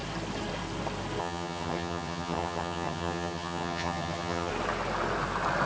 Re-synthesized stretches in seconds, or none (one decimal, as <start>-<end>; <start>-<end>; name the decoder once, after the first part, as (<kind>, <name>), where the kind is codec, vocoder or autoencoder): 1.2-4.5 (vocoder, HiFi-GAN)